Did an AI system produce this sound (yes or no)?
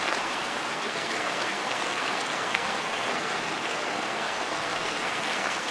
yes